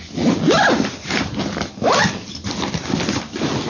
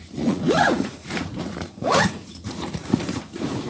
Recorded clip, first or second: first